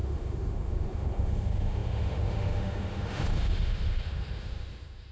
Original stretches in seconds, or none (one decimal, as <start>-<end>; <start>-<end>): none